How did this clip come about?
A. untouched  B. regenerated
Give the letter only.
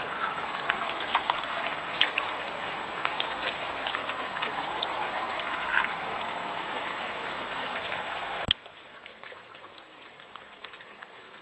B